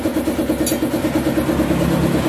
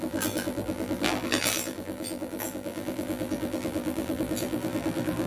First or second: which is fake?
second